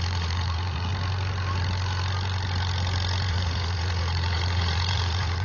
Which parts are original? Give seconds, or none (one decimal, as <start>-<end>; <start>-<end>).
0.9-3.3